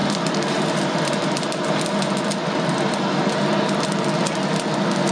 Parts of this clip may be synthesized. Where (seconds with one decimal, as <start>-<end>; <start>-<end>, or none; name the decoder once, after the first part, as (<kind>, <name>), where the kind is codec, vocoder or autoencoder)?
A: none